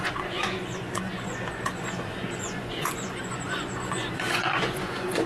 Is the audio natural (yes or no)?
no